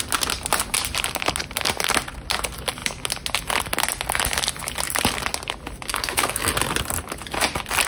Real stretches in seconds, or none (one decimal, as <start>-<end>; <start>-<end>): 0.0-5.9; 6.5-7.9